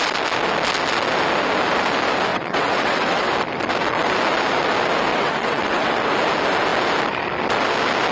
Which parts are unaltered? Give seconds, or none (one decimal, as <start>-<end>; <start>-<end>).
0.0-2.3; 3.3-5.1; 6.1-8.1